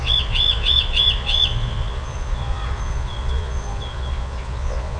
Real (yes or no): no